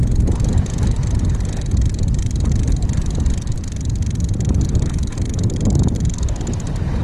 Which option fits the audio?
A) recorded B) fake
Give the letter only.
B